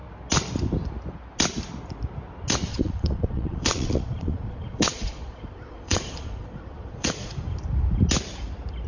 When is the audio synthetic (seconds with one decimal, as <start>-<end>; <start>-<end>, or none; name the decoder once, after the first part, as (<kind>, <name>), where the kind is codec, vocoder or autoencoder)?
2.7-7.3 (vocoder, Vocos)